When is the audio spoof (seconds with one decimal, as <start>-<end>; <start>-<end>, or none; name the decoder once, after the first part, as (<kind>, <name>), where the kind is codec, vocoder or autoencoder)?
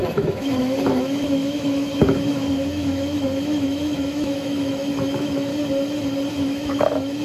0.0-5.5 (autoencoder, DAC-VAE); 6.3-7.2